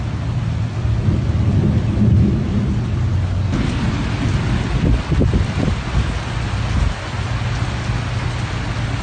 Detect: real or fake real